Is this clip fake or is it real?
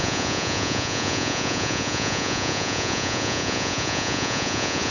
fake